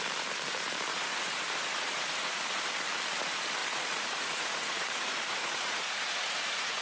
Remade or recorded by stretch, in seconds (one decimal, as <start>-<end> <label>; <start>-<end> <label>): 0.0-0.9 recorded; 0.9-2.6 remade; 2.6-3.6 recorded; 3.6-6.8 remade